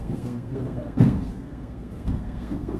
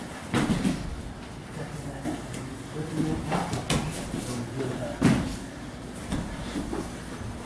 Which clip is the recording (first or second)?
second